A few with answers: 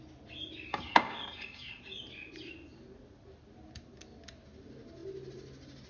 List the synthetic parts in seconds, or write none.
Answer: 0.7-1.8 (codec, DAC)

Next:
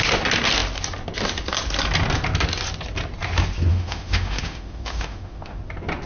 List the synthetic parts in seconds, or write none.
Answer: 3.7-5.6 (autoencoder, DAC-VAE)